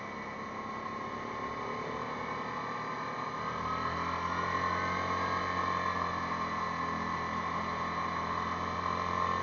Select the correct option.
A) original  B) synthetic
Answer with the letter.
A